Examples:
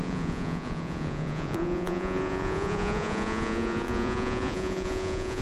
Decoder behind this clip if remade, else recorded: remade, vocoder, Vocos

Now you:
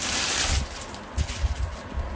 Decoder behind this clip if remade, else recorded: recorded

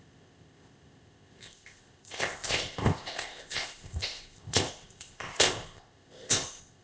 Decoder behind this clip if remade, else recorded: remade, codec, ZipCodec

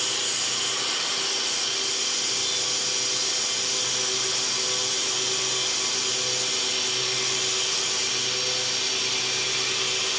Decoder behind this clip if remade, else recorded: recorded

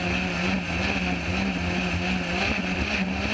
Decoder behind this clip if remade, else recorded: recorded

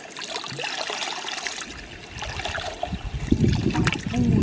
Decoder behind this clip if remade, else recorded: recorded